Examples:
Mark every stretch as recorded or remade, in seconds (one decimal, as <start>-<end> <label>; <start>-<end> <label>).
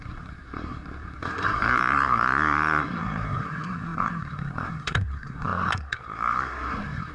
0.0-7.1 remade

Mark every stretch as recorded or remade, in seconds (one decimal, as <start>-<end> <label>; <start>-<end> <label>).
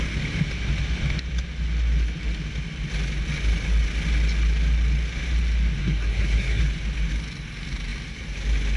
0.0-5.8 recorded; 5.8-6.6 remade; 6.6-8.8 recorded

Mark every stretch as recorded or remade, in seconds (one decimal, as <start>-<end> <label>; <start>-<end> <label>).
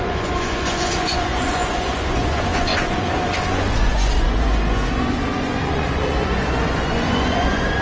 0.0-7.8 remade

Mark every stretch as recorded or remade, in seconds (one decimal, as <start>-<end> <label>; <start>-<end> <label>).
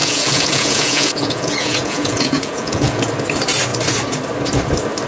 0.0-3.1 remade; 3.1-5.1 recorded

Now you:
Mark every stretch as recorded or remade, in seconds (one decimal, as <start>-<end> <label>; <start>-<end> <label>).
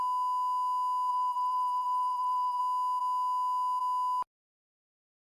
0.0-1.1 recorded; 1.1-2.6 remade; 2.6-5.3 recorded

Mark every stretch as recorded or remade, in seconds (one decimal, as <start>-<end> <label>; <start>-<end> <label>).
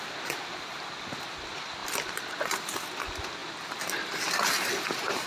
0.0-5.3 recorded